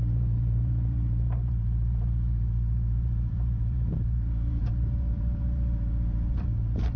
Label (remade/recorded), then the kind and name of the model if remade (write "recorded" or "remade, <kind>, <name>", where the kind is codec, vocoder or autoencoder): remade, vocoder, BigVGAN v2